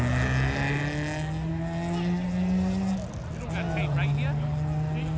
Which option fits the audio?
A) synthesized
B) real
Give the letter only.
B